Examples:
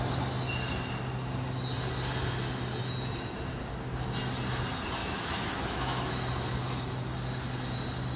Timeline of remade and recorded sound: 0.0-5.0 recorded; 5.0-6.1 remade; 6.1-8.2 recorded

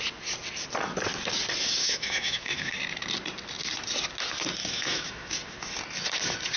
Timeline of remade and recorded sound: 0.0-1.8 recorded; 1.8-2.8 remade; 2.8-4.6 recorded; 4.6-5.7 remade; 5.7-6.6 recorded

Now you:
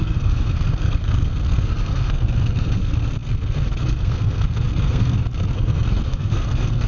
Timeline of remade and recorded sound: 0.0-6.9 remade

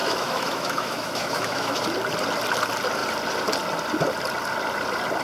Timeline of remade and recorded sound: 0.0-1.8 remade; 1.8-5.2 recorded

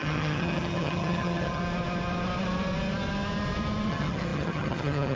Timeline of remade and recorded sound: 0.0-1.6 remade; 1.6-3.9 recorded; 3.9-5.2 remade

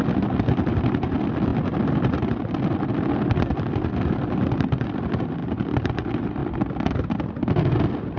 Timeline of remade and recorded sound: 0.0-8.2 remade